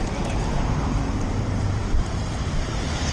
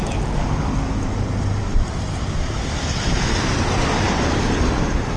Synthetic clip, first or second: first